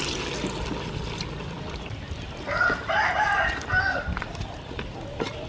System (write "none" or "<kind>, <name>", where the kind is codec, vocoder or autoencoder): none